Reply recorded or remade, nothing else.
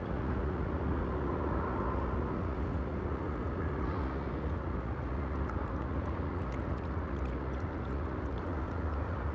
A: remade